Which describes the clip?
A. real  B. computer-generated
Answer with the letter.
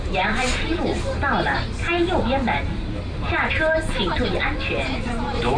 B